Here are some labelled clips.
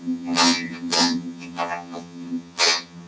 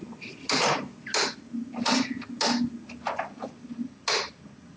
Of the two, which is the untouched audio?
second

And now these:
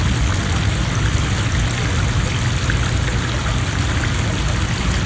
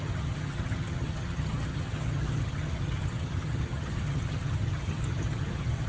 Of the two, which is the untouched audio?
first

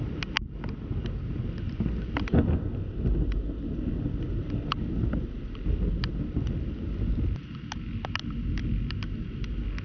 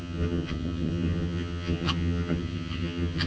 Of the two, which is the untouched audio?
first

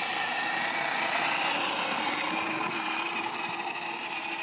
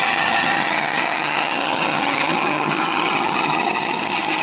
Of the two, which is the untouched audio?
first